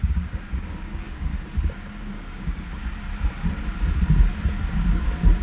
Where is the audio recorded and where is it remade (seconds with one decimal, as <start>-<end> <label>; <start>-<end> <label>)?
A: 0.0-1.3 remade; 1.3-2.0 recorded; 2.0-2.8 remade; 2.8-5.4 recorded